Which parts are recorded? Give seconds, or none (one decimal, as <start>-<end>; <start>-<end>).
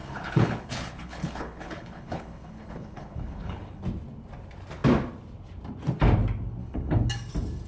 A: 3.8-6.6; 7.1-7.7